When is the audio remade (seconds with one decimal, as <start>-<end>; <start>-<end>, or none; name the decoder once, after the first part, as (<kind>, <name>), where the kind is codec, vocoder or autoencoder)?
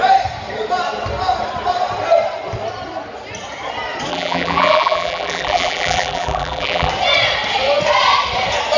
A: 4.1-6.9 (vocoder, BigVGAN v2)